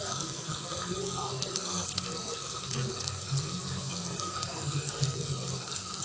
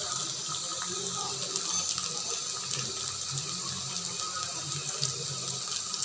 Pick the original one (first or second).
second